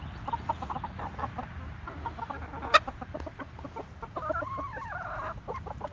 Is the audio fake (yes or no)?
no